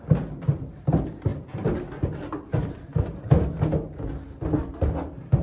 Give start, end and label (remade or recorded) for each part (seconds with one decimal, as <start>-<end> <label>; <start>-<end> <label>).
0.0-5.4 recorded